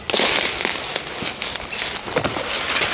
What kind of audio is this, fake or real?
real